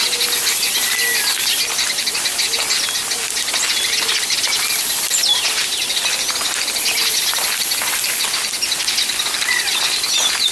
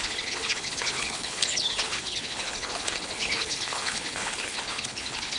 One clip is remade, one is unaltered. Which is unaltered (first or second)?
first